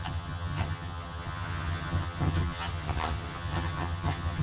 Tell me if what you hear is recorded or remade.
remade